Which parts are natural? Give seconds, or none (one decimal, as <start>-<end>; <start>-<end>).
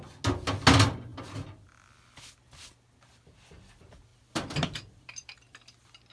0.0-4.1; 5.6-6.1